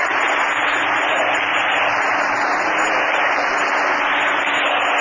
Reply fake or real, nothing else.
real